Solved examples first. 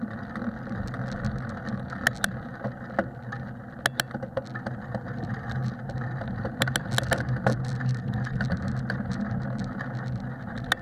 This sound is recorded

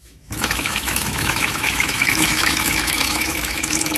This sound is remade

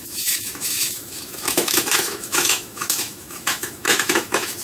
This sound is remade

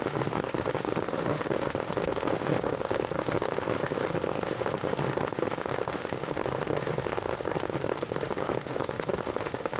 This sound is remade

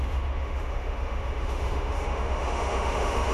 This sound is remade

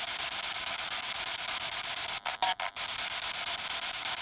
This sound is recorded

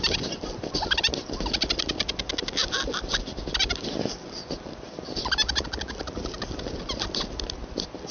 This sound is recorded